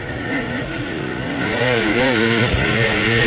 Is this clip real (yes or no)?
no